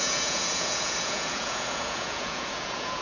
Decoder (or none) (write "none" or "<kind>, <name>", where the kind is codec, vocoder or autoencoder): vocoder, Vocos